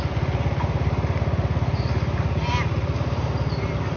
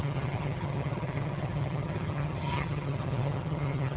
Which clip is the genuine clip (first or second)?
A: first